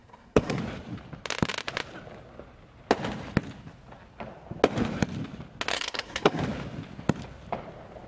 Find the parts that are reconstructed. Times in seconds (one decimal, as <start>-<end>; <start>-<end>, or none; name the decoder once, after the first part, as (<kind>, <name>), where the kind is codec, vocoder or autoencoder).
0.0-0.6 (codec, SNAC); 5.7-6.4